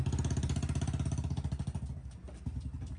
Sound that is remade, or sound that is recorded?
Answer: recorded